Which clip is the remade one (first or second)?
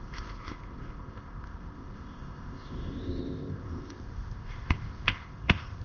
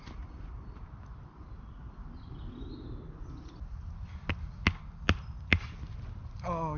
first